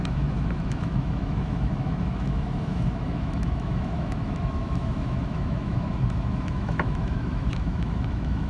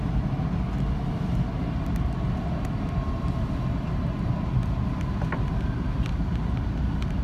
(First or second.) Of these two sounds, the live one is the second